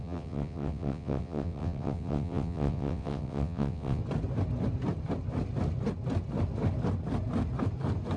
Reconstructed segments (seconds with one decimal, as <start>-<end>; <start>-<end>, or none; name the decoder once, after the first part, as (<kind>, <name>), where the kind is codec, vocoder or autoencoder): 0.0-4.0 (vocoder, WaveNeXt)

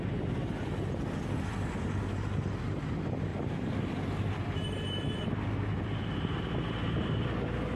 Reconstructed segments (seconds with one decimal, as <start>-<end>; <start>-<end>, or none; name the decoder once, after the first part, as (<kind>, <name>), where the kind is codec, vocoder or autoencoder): 3.3-6.6 (vocoder, BigVGAN v2)

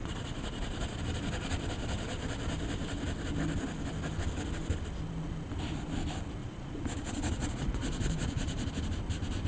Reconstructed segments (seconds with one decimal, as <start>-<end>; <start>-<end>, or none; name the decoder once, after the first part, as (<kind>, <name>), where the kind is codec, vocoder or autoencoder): 0.0-1.0 (vocoder, Vocos); 6.4-8.7

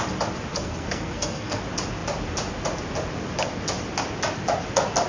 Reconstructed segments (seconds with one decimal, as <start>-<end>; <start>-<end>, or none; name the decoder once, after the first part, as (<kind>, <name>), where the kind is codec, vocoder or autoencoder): 0.5-1.6 (codec, SNAC)

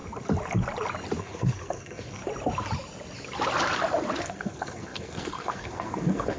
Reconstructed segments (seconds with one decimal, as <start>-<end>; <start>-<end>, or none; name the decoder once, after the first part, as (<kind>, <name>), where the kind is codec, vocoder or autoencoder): 1.2-2.2 (codec, SNAC); 4.2-6.4

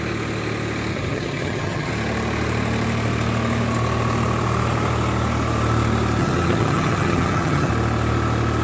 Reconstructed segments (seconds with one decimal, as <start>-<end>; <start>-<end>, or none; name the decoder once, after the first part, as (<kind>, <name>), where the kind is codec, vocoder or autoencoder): 0.9-1.9 (vocoder, HiFi-GAN); 6.2-7.7

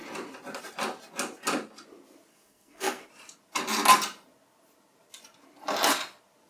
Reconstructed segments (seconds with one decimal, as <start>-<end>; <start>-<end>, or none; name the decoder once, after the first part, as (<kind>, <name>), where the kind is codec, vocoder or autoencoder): 2.3-3.1 (codec, SNAC)

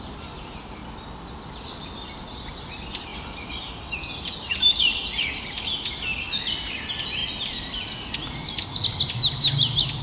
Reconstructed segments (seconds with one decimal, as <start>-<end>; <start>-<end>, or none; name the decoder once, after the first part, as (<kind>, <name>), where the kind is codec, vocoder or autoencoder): none